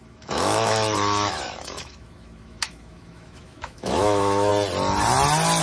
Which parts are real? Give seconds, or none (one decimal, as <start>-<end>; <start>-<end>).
4.5-5.6

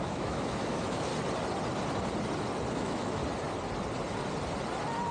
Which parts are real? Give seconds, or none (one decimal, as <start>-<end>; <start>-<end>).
1.1-2.7; 3.2-5.1

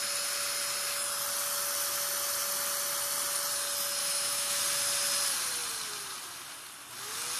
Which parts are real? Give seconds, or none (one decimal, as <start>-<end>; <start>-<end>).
0.0-4.0; 4.6-7.4

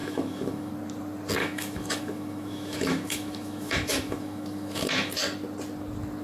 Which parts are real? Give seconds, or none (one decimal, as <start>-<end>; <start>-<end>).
0.7-1.4; 5.1-6.2

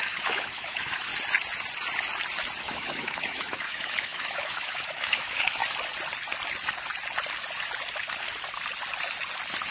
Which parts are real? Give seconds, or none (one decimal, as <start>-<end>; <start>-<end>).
1.1-2.6; 5.6-9.7

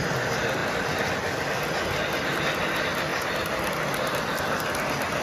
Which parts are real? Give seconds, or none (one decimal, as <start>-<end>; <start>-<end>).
0.0-5.2

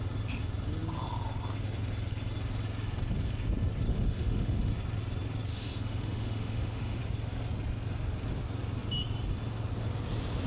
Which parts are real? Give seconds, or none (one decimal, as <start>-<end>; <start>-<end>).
0.0-3.9; 4.7-5.5; 7.0-10.5

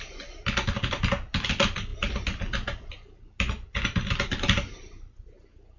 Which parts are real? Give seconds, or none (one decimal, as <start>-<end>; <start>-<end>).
0.0-5.8